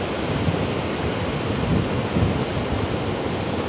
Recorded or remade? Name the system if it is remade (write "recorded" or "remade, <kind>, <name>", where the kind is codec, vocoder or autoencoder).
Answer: recorded